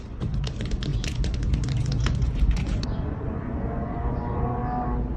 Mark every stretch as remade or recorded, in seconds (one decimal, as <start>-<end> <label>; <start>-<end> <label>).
0.0-4.6 remade; 4.6-5.2 recorded